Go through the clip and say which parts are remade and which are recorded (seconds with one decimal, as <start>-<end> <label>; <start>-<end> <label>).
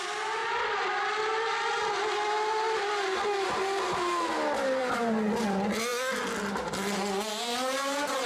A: 0.0-8.3 recorded